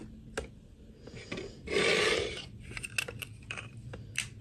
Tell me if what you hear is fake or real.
real